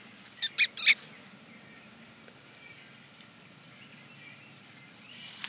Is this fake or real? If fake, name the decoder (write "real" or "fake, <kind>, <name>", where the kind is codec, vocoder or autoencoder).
real